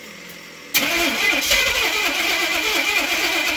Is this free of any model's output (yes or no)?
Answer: yes